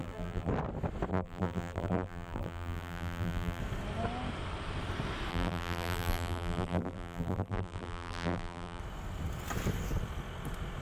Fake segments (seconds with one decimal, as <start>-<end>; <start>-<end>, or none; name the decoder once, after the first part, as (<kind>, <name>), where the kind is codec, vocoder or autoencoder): 0.0-0.5 (vocoder, BigVGAN v2); 1.1-3.6; 5.3-8.8